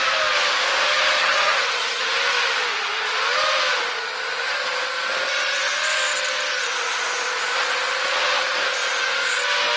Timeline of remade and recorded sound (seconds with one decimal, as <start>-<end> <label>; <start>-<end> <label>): 0.0-1.2 recorded; 1.2-2.0 remade; 2.0-9.8 recorded